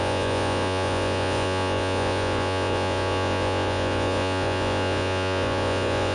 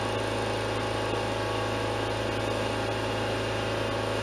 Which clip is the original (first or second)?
second